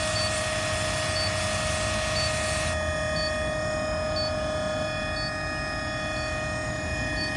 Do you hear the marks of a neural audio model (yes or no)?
no